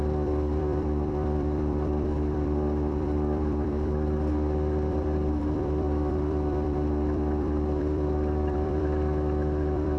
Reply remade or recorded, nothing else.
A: remade